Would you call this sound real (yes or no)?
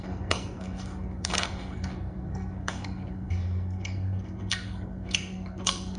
no